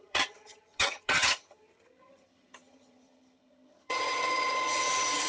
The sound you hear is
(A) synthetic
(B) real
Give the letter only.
A